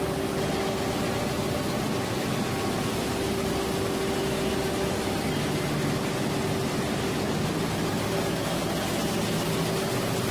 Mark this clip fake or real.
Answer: real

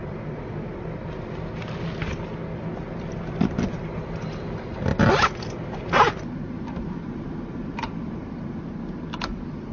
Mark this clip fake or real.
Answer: real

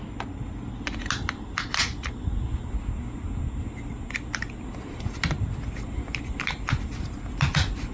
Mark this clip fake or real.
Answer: real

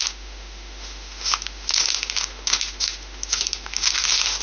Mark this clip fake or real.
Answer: fake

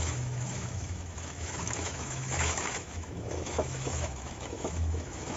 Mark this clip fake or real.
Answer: fake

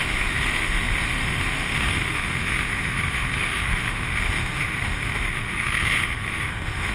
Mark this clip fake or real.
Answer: fake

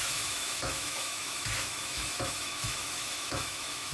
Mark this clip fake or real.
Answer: fake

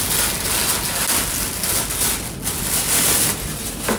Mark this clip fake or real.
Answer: real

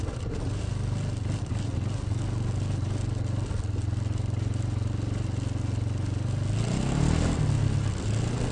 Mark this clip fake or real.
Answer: real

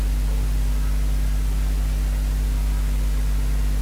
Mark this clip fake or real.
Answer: real